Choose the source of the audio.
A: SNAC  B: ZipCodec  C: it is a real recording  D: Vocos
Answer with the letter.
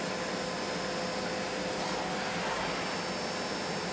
C